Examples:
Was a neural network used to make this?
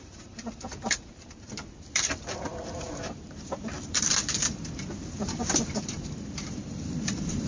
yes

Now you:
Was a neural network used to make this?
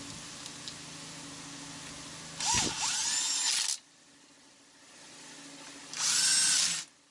no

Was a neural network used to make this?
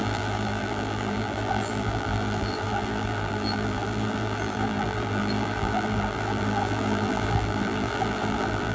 yes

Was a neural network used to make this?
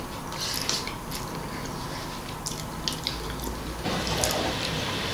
no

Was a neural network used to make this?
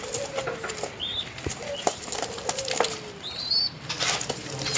yes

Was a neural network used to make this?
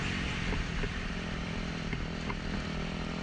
yes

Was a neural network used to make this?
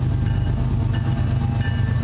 no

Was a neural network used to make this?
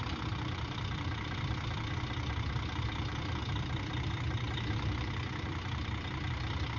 no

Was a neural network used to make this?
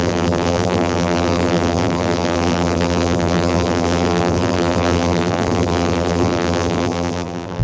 yes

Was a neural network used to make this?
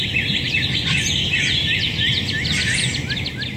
no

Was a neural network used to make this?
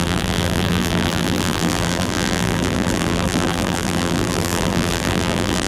yes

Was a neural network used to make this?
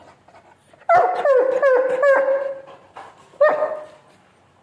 no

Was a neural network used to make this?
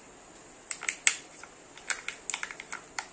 no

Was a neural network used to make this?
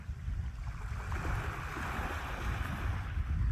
no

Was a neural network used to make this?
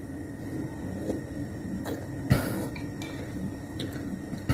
yes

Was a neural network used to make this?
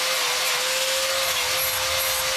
no